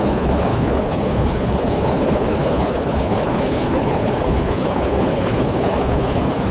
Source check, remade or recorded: remade